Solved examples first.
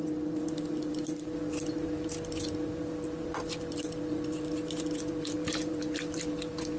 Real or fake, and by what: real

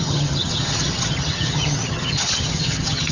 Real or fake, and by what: fake, vocoder, HiFi-GAN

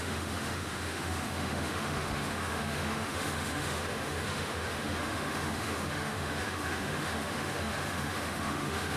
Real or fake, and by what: fake, autoencoder, DAC-VAE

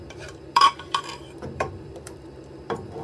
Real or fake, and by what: fake, vocoder, BigVGAN v2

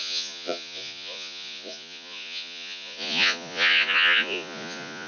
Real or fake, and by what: fake, vocoder, Vocos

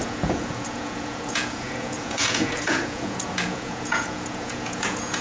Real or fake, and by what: fake, vocoder, Vocos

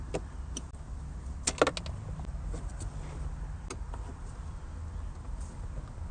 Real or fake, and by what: real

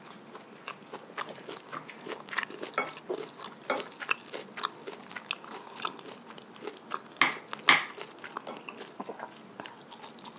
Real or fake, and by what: real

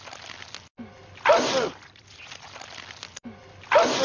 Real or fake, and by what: real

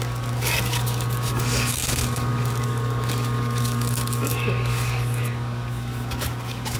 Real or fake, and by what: fake, codec, DAC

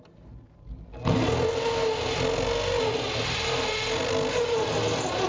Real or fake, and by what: real